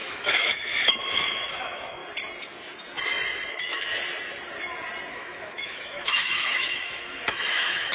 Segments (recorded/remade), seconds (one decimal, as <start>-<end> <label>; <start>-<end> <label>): 0.0-2.0 remade; 2.0-3.5 recorded; 3.5-3.9 remade; 3.9-5.1 recorded; 5.1-7.9 remade